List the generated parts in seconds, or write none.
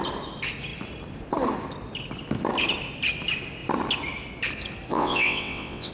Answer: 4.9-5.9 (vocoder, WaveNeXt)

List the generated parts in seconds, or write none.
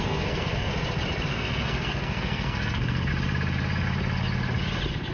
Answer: 0.0-0.7 (codec, SNAC); 1.3-3.1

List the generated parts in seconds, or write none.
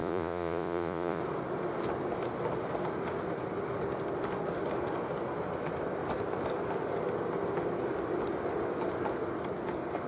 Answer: 0.0-1.2 (vocoder, Vocos)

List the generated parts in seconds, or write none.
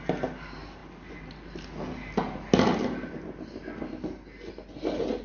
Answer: none